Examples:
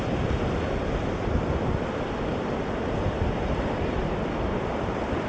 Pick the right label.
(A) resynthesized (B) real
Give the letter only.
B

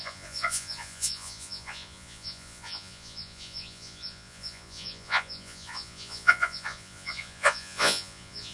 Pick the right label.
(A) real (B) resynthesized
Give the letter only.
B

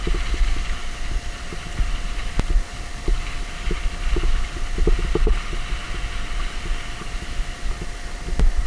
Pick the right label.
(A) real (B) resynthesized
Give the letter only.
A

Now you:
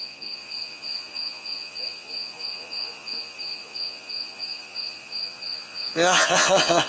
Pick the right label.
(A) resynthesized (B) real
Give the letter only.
A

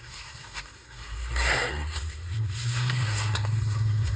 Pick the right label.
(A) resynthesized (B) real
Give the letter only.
A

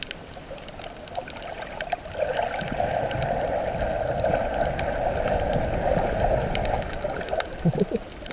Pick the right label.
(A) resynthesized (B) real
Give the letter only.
B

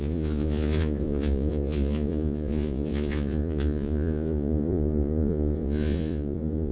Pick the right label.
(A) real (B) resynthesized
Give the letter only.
B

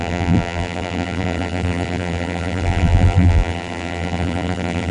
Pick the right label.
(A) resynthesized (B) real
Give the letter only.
A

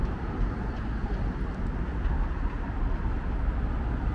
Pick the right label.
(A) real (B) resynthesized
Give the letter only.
A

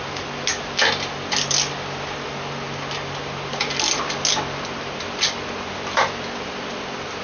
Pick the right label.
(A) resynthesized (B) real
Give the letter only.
B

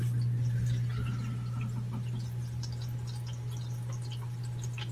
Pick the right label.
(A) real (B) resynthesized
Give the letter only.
A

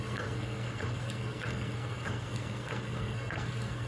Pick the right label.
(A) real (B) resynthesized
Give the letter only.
B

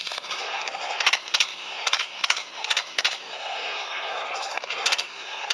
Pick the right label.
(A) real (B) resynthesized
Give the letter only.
B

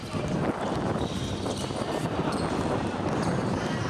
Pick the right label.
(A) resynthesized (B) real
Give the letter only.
B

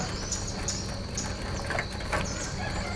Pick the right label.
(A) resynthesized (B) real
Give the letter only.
B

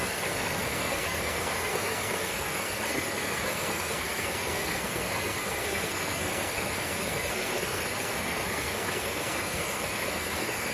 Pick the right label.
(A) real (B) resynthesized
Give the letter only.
B